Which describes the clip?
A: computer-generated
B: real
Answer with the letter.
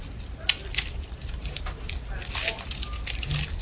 B